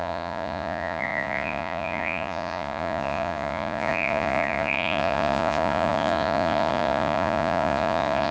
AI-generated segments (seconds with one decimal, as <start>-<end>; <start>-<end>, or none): 0.0-8.3